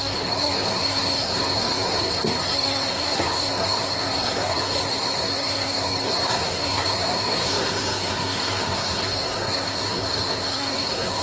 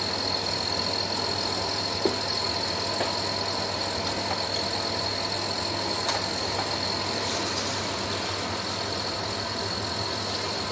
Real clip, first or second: second